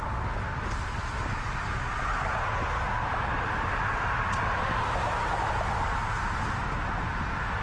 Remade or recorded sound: recorded